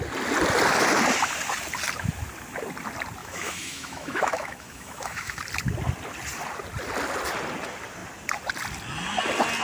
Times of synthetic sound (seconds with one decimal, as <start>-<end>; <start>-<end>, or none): 3.2-5.4